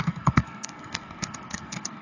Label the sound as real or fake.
fake